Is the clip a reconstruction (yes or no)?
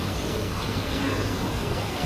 yes